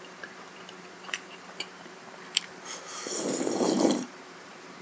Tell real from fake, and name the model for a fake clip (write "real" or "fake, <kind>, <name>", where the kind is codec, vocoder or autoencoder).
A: fake, vocoder, BigVGAN v2